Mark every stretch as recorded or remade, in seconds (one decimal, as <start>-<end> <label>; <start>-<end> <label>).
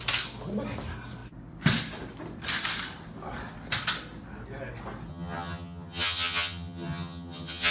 0.0-5.1 recorded; 5.1-7.7 remade